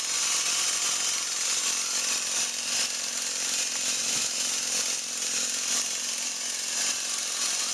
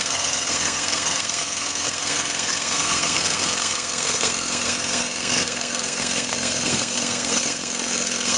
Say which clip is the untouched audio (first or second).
first